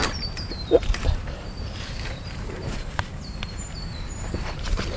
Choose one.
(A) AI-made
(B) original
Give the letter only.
A